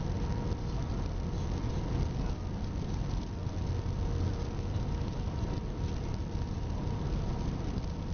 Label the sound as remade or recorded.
recorded